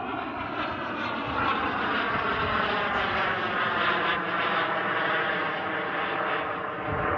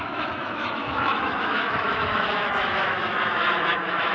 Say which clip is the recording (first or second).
first